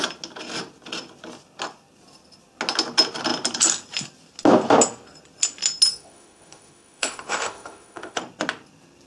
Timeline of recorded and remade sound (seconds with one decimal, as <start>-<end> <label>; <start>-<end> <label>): 0.0-5.9 recorded; 5.9-8.2 remade; 8.2-9.1 recorded